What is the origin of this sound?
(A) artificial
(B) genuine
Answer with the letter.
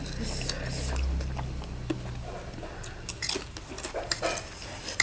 B